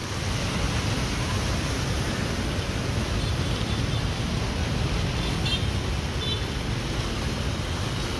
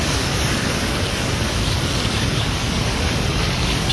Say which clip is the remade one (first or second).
second